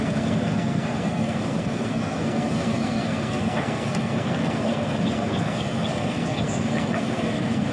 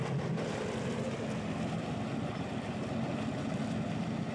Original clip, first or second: second